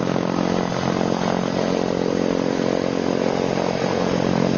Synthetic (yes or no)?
no